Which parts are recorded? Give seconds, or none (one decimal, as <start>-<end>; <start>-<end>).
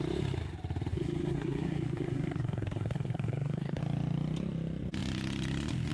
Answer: 0.0-0.9; 3.8-5.9